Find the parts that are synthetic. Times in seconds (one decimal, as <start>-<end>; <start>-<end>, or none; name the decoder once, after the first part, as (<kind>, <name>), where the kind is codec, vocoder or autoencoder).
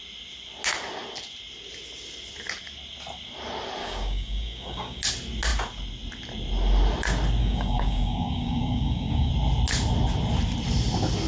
3.8-5.0 (codec, DAC); 7.4-9.3